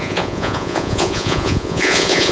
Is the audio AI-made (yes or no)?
yes